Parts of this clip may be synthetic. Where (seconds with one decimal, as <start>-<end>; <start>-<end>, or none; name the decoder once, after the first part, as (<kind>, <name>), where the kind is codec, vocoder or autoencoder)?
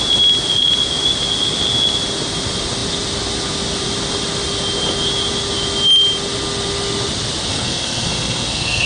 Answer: 7.5-8.9 (codec, SNAC)